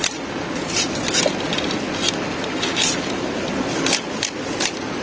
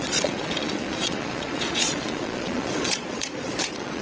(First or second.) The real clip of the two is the first